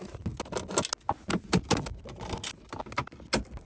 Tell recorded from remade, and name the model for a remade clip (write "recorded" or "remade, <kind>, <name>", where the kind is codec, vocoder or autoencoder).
recorded